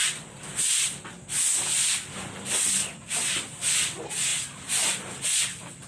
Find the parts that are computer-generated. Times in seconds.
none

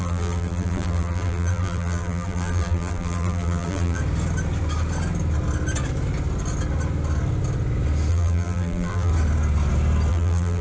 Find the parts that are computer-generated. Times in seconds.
0.0-4.0; 8.1-9.1; 10.1-10.6

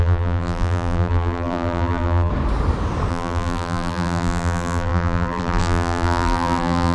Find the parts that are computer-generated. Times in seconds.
0.0-2.3; 3.1-6.9

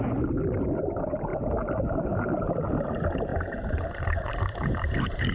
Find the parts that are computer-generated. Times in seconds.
3.3-5.3

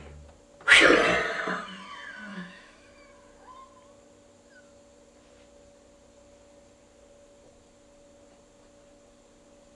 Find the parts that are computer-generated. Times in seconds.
2.3-2.9

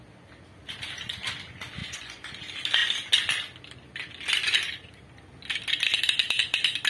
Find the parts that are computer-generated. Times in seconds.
1.8-2.3

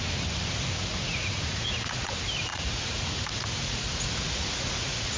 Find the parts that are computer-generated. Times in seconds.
0.9-2.1; 2.5-5.2